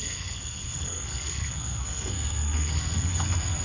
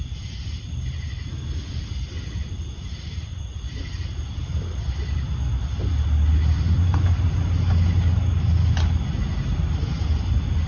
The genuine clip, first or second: second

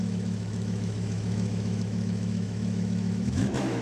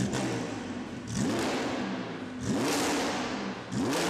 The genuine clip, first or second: second